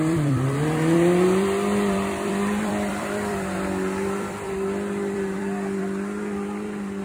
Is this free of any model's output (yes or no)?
no